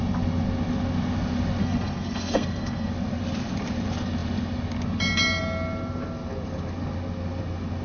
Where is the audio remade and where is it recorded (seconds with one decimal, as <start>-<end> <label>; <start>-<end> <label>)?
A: 0.0-1.6 recorded; 1.6-2.9 remade; 2.9-7.8 recorded